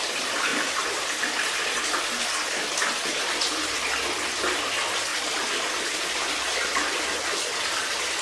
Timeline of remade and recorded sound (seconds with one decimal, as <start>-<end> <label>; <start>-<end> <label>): 0.0-5.1 recorded; 5.1-7.6 remade; 7.6-8.2 recorded